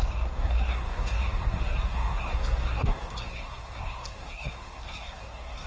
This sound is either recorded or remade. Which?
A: remade